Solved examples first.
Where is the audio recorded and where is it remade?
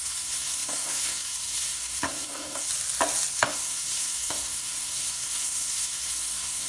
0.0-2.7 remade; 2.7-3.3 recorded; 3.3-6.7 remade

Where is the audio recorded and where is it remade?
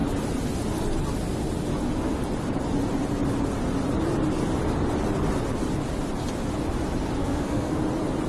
0.0-7.2 recorded; 7.2-7.8 remade; 7.8-8.3 recorded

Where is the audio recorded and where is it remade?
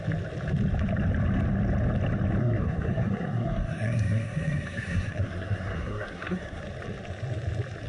0.0-2.4 recorded; 2.4-6.6 remade; 6.6-7.9 recorded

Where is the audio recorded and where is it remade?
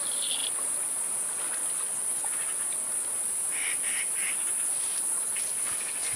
0.0-6.2 recorded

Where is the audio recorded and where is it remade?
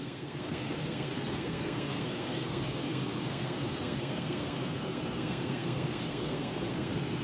0.0-7.2 remade